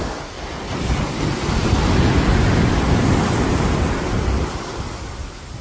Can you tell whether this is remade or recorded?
recorded